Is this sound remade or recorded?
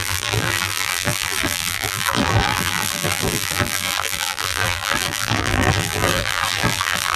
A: remade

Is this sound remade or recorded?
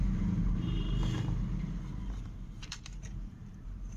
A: remade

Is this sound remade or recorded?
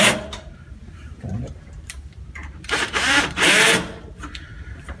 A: remade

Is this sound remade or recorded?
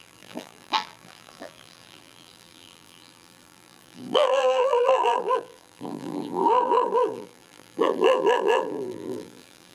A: remade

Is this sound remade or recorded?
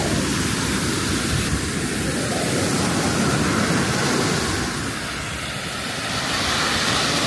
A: recorded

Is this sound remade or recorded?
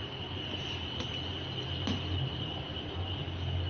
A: recorded